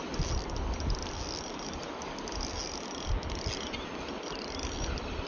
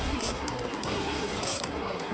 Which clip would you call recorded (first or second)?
first